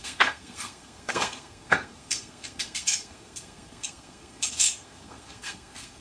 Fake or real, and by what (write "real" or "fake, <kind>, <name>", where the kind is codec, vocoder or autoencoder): fake, codec, SNAC